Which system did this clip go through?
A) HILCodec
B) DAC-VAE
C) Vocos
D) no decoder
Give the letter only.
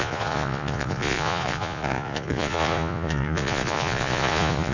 C